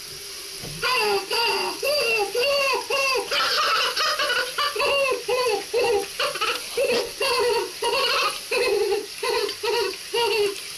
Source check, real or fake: real